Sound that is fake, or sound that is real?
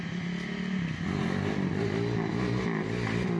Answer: real